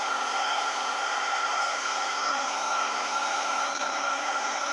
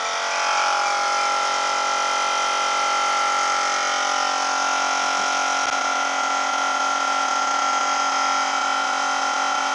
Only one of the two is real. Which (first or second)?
second